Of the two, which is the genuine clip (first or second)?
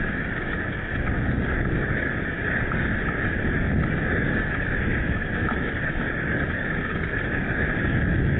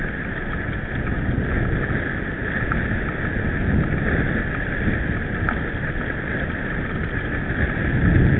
second